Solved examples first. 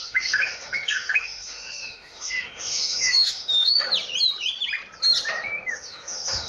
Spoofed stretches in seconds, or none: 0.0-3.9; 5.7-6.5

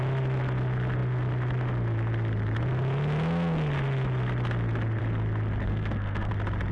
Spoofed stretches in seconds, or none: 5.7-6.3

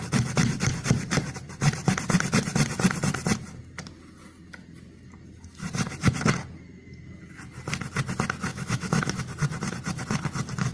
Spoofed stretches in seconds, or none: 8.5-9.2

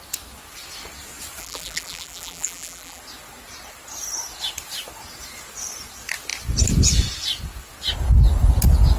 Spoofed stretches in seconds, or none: 1.4-3.0